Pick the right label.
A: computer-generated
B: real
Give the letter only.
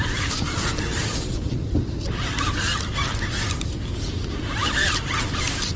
B